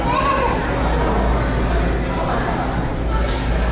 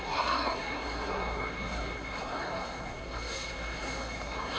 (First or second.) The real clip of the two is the first